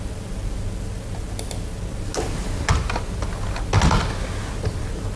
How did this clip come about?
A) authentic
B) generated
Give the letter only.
A